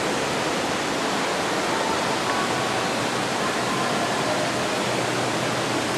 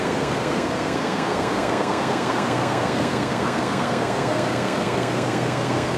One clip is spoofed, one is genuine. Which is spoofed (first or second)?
second